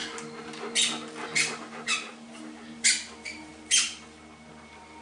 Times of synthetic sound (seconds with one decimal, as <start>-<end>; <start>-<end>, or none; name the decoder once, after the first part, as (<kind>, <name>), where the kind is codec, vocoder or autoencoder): none